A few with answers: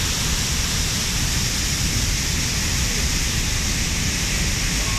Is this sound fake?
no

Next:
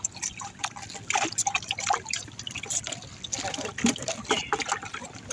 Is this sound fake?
no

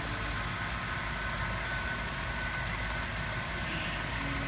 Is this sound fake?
no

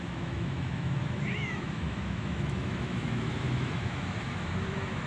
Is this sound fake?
yes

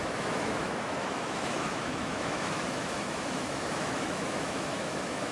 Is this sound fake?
yes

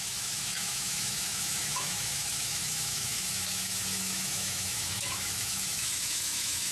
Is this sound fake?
yes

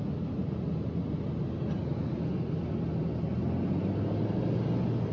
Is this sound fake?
no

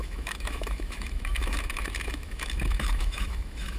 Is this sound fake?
yes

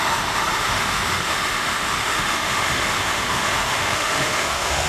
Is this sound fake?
yes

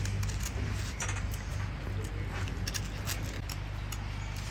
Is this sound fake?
no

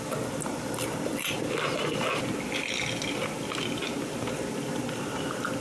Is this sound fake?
no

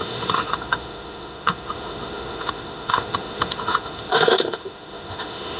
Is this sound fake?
yes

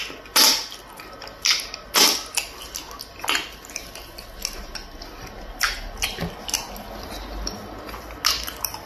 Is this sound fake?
no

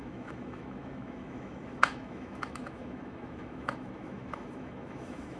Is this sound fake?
yes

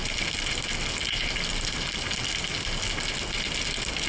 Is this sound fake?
no